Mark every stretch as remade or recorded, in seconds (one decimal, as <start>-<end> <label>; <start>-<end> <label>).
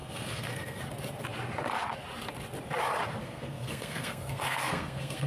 0.0-0.8 remade; 0.8-3.2 recorded; 3.2-5.3 remade